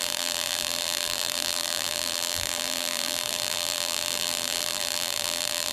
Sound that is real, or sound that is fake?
fake